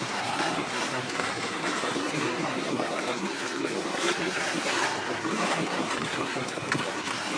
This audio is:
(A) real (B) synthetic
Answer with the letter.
B